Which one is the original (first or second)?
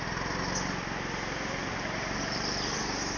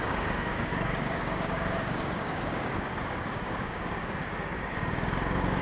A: first